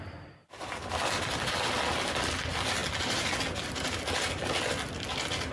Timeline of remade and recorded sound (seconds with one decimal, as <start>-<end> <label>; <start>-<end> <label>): 0.0-5.5 recorded